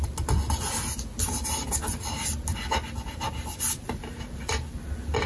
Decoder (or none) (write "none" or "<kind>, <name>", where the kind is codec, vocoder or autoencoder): none